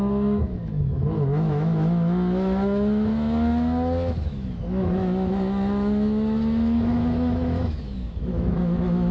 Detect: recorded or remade remade